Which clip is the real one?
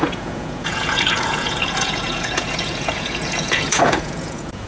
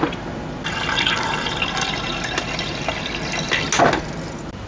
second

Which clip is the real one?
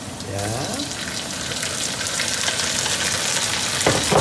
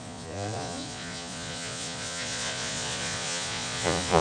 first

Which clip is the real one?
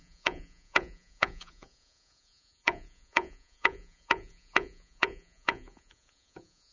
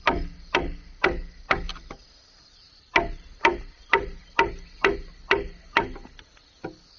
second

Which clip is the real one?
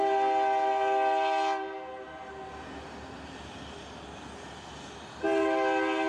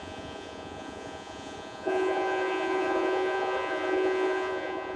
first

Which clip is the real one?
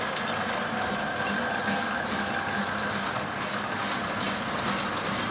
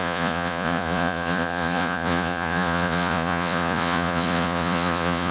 first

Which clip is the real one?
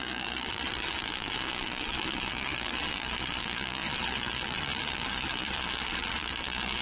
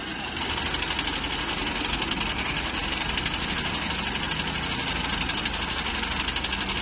second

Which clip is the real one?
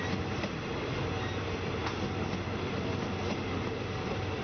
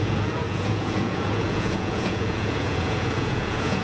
first